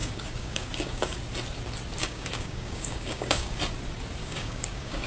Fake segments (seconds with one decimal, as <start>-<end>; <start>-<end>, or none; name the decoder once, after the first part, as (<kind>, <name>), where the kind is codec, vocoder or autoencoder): 0.0-1.2 (codec, DAC); 2.0-3.6; 4.2-5.1